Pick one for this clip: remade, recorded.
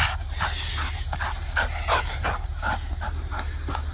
recorded